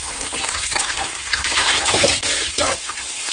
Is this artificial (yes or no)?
yes